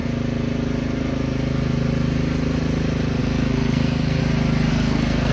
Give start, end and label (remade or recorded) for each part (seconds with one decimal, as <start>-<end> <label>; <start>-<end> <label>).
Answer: 0.0-3.2 recorded; 3.2-4.2 remade; 4.2-4.7 recorded; 4.7-5.3 remade